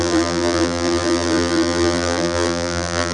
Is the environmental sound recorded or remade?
remade